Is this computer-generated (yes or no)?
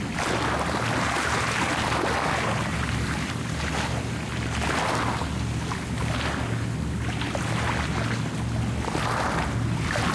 no